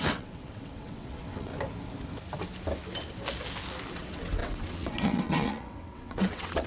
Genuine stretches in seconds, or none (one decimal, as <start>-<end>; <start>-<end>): 1.5-3.9